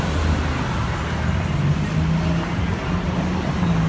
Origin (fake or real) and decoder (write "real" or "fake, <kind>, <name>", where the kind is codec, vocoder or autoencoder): real